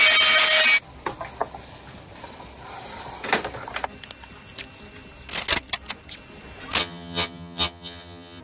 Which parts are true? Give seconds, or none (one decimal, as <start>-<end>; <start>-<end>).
0.0-6.8